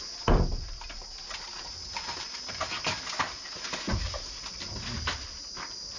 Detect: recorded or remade recorded